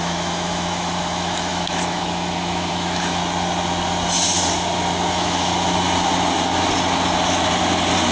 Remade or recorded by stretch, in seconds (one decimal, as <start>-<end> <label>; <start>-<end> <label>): 0.0-3.2 remade; 3.2-5.1 recorded; 5.1-5.5 remade; 5.5-8.1 recorded